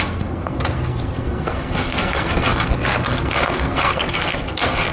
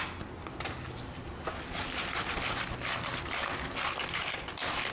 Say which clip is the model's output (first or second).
first